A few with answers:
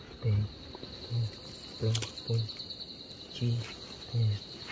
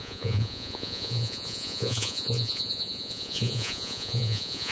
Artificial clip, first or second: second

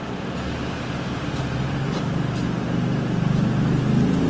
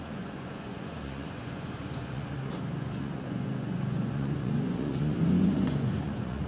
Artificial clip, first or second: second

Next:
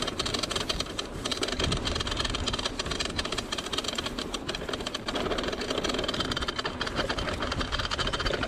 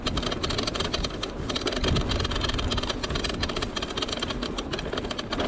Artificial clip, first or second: first